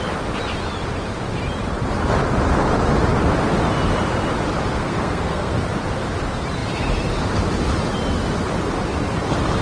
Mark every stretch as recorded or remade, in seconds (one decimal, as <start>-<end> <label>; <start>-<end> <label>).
0.0-4.7 recorded; 4.7-5.7 remade; 5.7-9.6 recorded